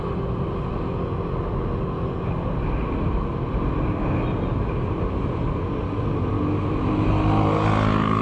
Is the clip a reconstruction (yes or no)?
no